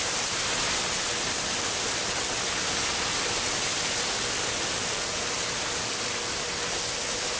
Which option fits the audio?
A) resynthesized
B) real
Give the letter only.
B